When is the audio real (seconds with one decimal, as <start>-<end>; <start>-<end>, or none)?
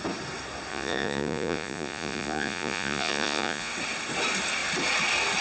0.0-0.7; 3.7-5.4